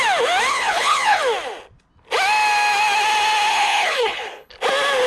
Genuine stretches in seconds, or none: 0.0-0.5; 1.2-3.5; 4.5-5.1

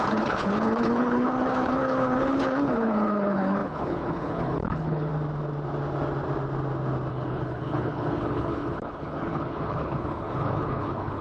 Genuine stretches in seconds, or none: 5.1-7.1

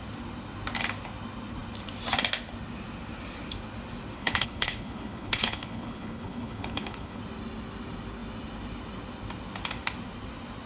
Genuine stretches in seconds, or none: 0.0-4.2; 7.2-10.7

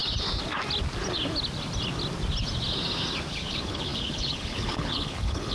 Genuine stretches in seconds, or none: 0.0-3.3

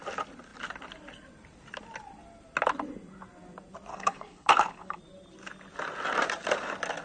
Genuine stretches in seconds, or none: 0.0-3.9; 5.0-7.0